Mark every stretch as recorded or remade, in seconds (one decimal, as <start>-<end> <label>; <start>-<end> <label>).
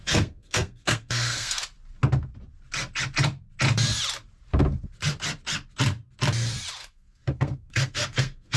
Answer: 0.0-1.6 remade; 1.6-6.8 recorded; 6.8-8.6 remade